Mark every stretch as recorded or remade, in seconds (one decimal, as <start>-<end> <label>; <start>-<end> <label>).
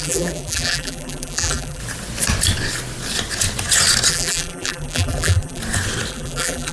0.0-1.8 remade; 1.8-4.1 recorded; 4.1-5.6 remade; 5.6-6.1 recorded; 6.1-6.7 remade